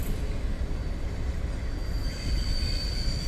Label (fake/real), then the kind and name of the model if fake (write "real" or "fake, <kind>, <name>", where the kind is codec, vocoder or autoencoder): real